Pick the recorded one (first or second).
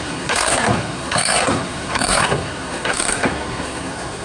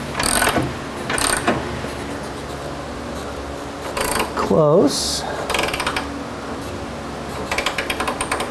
second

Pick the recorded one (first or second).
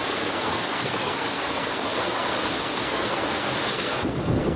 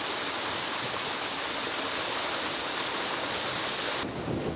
second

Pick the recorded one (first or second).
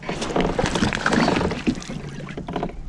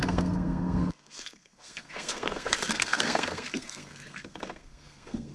first